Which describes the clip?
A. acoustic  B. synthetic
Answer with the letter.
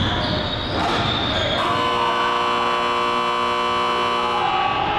A